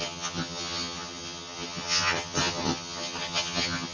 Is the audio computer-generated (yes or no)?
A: yes